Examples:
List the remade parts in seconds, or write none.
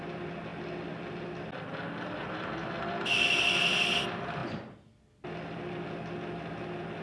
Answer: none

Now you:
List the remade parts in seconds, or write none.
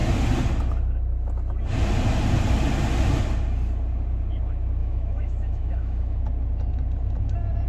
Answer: 4.8-6.2